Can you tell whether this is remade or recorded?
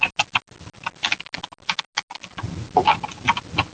recorded